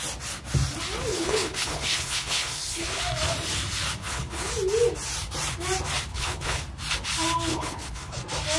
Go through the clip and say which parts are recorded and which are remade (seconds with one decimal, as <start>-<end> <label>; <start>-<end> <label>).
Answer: 0.0-1.1 recorded; 1.1-3.0 remade; 3.0-4.0 recorded; 4.0-4.5 remade; 4.5-6.1 recorded; 6.1-6.6 remade; 6.6-7.5 recorded; 7.5-8.2 remade; 8.2-8.6 recorded